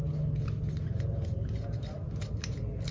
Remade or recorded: recorded